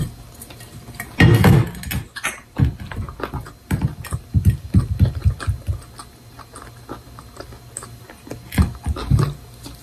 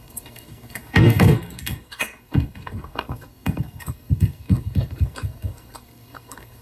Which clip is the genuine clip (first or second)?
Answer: first